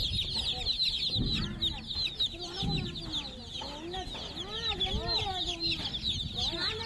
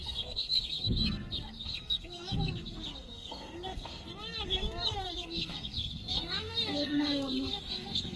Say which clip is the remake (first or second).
second